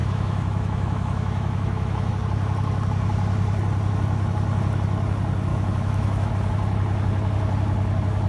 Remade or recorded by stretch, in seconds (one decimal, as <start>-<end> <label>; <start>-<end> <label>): 0.0-2.1 remade; 2.1-5.5 recorded; 5.5-6.3 remade; 6.3-8.3 recorded

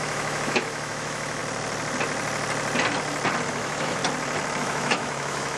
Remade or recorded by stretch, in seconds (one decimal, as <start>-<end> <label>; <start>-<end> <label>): 0.0-1.4 remade; 1.4-3.5 recorded; 3.5-4.0 remade; 4.0-4.6 recorded; 4.6-5.6 remade